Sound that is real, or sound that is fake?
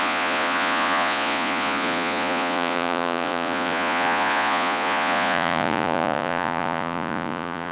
fake